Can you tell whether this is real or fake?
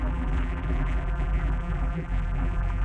fake